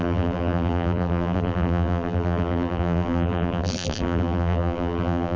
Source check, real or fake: fake